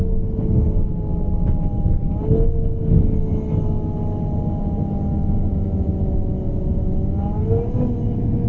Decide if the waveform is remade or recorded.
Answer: recorded